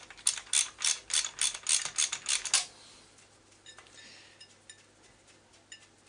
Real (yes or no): yes